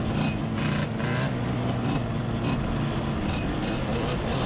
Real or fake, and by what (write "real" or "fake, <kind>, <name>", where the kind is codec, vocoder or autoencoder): real